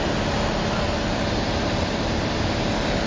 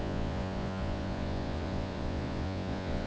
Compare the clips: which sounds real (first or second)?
first